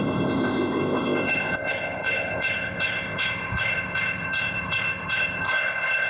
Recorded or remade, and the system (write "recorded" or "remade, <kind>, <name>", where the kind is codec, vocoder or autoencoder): remade, codec, ZipCodec